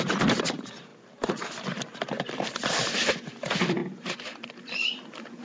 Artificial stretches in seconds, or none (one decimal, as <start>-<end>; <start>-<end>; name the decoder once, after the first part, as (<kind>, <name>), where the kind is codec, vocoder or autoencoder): 0.0-0.9 (vocoder, BigVGAN v2); 2.3-3.8; 4.6-5.4